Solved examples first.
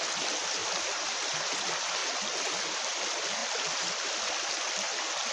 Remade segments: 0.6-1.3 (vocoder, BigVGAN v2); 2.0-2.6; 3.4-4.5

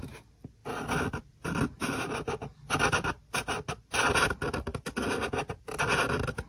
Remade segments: 0.6-1.6 (vocoder, BigVGAN v2); 2.5-3.1

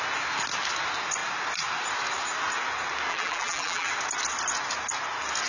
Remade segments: 3.1-3.9 (vocoder, BigVGAN v2)

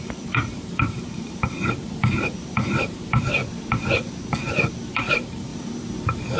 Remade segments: 0.0-3.4 (vocoder, BigVGAN v2); 4.8-5.5

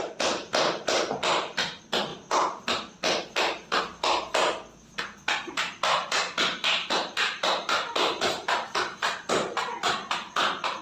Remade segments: 2.1-3.8 (vocoder, BigVGAN v2)